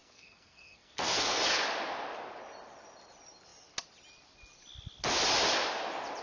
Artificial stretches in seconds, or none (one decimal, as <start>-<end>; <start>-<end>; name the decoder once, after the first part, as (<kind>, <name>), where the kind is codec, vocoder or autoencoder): 0.0-1.4 (codec, SNAC)